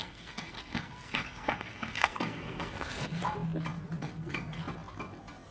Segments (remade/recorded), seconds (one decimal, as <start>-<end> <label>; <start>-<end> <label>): 0.0-3.2 remade; 3.2-4.0 recorded; 4.0-4.6 remade; 4.6-5.5 recorded